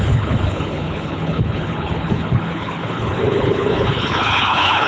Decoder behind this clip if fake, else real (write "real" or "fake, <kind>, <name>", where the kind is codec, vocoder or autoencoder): fake, codec, HILCodec